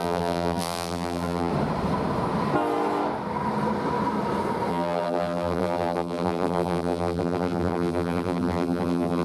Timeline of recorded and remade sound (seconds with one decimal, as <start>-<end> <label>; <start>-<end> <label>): 0.0-1.5 remade; 1.5-4.7 recorded; 4.7-9.2 remade